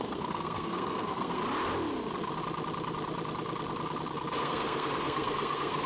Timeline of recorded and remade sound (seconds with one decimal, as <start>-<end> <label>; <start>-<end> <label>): 0.0-1.4 remade; 1.4-4.4 recorded; 4.4-5.9 remade